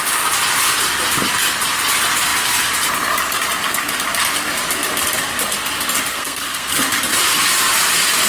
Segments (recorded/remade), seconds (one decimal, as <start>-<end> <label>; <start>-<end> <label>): 0.0-6.1 recorded; 6.1-6.7 remade; 6.7-8.3 recorded